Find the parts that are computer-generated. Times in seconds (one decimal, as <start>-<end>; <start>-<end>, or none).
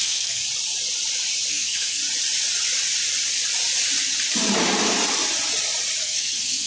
0.0-0.4; 1.5-2.0; 6.0-6.7